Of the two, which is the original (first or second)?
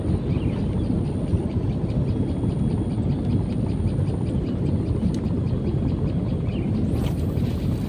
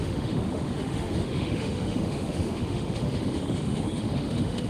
first